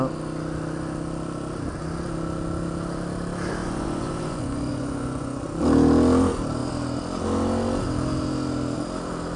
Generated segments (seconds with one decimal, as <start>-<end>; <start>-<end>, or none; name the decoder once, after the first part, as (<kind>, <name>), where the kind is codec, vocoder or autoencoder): 3.6-5.4 (vocoder, Vocos)

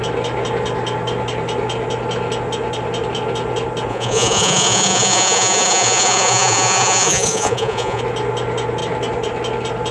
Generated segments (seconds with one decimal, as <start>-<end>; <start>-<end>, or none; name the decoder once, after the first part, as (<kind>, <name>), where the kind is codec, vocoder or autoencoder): 3.9-8.0 (vocoder, Vocos)